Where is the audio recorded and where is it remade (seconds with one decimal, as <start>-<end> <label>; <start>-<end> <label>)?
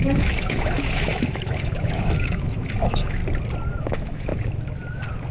0.0-3.2 remade; 3.2-3.8 recorded; 3.8-4.3 remade; 4.3-5.3 recorded